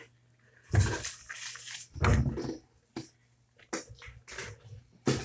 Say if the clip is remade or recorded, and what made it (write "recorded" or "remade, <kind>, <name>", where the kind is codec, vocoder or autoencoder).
recorded